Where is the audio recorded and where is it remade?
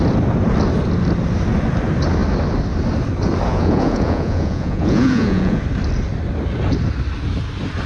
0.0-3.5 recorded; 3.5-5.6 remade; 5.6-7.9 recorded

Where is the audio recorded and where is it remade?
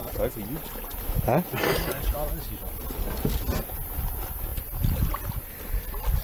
0.0-4.5 recorded; 4.5-5.2 remade; 5.2-6.2 recorded